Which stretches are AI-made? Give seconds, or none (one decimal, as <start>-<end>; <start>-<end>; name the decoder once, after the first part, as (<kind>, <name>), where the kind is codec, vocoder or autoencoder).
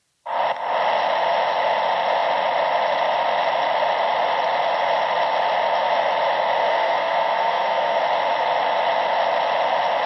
6.7-8.0 (codec, SNAC)